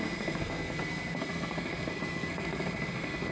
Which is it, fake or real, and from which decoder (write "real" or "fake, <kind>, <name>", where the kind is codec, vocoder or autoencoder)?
fake, codec, SNAC